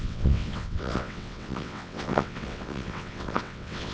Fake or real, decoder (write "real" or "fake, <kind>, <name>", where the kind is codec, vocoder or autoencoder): fake, vocoder, WaveNeXt